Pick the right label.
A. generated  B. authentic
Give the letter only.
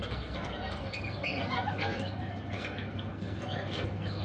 A